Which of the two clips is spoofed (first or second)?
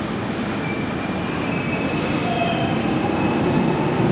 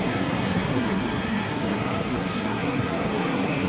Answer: second